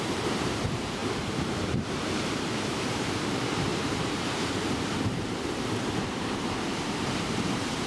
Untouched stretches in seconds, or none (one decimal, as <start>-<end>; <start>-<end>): none